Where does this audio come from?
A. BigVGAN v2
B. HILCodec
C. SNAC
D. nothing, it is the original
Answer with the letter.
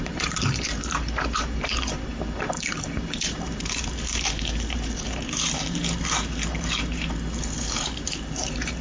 A